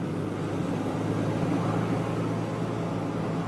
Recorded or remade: recorded